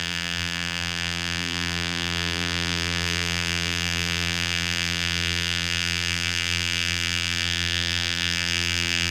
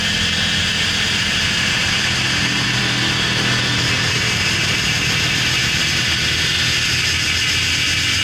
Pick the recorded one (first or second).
second